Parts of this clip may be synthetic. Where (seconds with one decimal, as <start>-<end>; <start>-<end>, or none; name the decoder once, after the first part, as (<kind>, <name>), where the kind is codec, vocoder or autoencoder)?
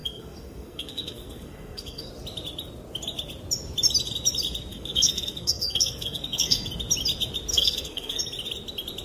0.0-2.1 (codec, SNAC); 4.7-6.7; 7.5-8.2